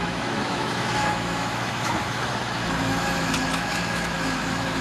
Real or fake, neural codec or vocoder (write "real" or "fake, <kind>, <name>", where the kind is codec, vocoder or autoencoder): fake, autoencoder, DAC-VAE